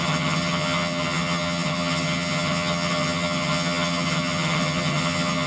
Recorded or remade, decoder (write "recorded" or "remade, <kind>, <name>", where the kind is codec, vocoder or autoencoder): remade, vocoder, HiFi-GAN